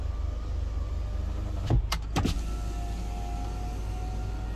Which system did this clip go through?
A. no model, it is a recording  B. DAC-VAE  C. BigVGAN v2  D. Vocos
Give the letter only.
A